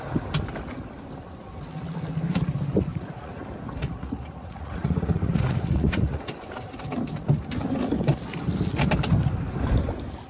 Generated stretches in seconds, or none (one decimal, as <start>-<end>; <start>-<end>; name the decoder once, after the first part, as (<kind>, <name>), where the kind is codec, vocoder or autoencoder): 2.9-3.4 (vocoder, Vocos); 3.8-6.3